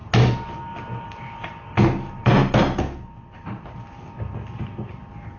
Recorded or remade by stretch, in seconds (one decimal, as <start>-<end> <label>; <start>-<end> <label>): 0.0-5.4 recorded